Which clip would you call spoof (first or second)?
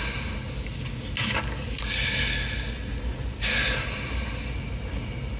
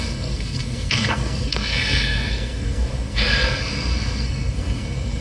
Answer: second